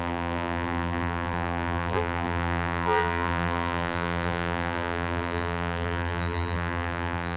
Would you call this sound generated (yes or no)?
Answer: yes